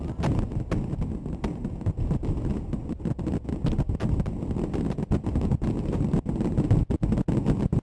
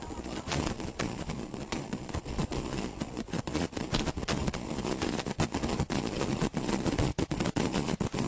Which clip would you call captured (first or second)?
first